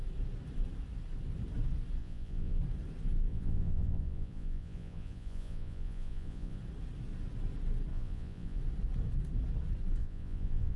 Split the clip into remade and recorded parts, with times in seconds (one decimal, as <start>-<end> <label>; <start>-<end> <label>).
0.0-2.0 recorded; 2.0-2.6 remade; 2.6-3.3 recorded; 3.3-6.6 remade; 6.6-7.9 recorded; 7.9-8.6 remade; 8.6-10.0 recorded; 10.0-10.8 remade